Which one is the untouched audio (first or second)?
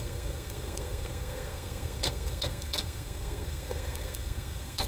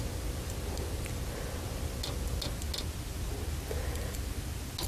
second